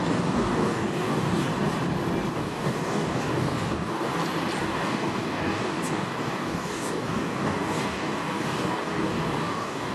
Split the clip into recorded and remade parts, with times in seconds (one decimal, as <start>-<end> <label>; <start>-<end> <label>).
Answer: 0.0-1.5 remade; 1.5-2.3 recorded; 2.3-4.1 remade; 4.1-4.6 recorded; 4.6-9.9 remade